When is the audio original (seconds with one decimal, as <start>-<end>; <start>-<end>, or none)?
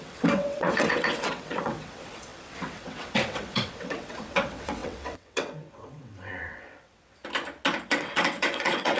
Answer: 7.2-7.8